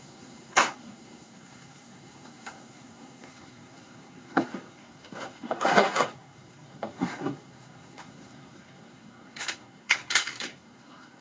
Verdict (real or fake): fake